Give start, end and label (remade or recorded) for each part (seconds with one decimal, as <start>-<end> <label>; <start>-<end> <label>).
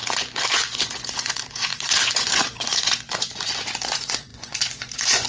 0.0-5.3 remade